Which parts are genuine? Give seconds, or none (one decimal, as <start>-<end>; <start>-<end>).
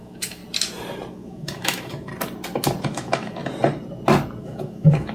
0.4-1.1; 2.1-2.8; 3.4-4.4